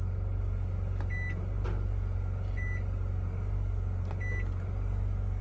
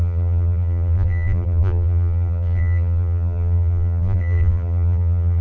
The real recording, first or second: first